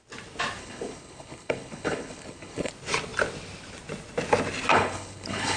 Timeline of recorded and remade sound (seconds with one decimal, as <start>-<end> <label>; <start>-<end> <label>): 0.0-0.6 recorded; 0.6-2.7 remade; 2.7-4.7 recorded; 4.7-5.6 remade